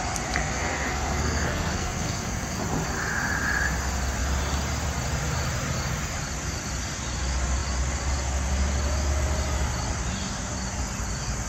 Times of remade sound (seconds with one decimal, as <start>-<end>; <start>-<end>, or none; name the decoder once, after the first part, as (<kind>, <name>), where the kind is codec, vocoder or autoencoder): 0.4-2.6 (codec, SNAC)